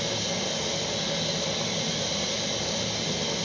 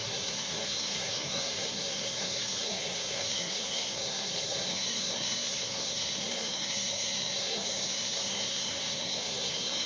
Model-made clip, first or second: second